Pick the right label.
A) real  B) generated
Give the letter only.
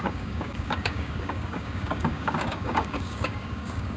B